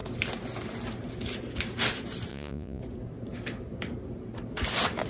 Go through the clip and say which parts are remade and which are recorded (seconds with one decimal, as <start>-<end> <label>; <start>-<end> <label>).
0.0-2.3 recorded; 2.3-2.8 remade; 2.8-5.1 recorded

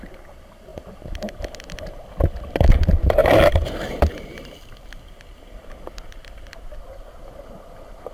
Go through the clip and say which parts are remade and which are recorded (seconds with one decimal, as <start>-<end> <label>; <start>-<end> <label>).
0.0-3.2 recorded; 3.2-4.5 remade; 4.5-8.1 recorded

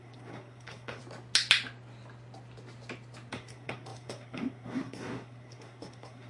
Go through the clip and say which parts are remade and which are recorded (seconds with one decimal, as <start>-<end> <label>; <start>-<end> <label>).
0.0-1.0 remade; 1.0-3.3 recorded; 3.3-6.3 remade